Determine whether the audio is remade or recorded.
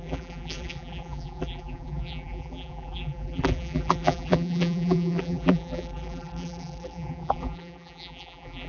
remade